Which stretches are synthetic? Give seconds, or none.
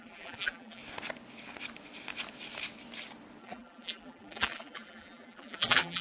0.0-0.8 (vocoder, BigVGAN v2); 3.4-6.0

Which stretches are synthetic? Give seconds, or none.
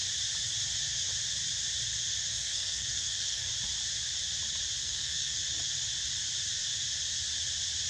2.3-3.5 (codec, SNAC); 4.8-5.4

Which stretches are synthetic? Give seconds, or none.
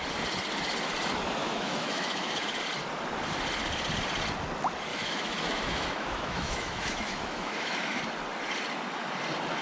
1.4-2.6 (autoencoder, DAC-VAE); 4.9-8.0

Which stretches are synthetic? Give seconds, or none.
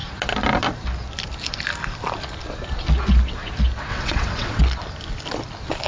3.9-4.6 (vocoder, WaveNeXt)